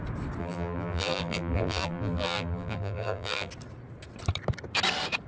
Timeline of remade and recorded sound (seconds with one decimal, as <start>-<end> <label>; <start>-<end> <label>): 0.0-0.4 recorded; 0.4-3.5 remade; 3.5-5.3 recorded